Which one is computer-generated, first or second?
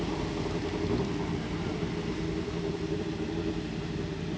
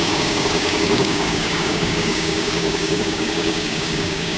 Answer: second